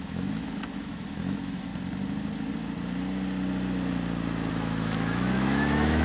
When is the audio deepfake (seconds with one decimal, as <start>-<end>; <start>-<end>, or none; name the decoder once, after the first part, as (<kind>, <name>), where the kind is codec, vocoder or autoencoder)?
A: 0.0-1.7 (autoencoder, DAC-VAE); 4.5-6.0